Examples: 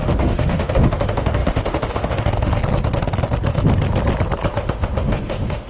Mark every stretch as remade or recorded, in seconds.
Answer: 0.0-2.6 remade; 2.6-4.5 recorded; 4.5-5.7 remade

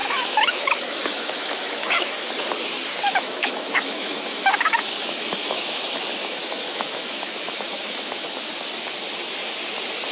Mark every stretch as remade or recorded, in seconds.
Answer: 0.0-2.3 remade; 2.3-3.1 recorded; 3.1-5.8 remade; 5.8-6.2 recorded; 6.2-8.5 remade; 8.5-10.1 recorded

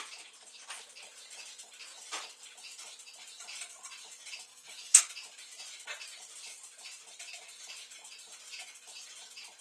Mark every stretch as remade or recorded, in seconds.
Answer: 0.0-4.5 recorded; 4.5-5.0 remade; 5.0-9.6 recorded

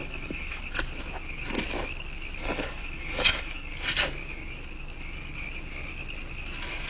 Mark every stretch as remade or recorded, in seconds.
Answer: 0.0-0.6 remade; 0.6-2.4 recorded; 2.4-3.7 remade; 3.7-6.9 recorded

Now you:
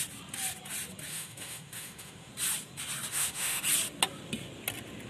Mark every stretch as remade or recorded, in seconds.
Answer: 0.0-1.1 recorded; 1.1-2.3 remade; 2.3-3.1 recorded; 3.1-3.6 remade; 3.6-5.1 recorded

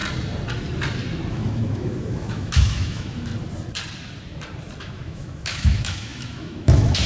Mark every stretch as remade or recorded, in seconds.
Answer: 0.0-1.3 recorded; 1.3-3.3 remade; 3.3-4.8 recorded; 4.8-7.1 remade

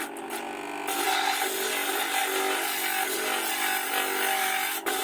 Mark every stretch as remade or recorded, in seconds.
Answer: 0.0-4.4 recorded; 4.4-5.0 remade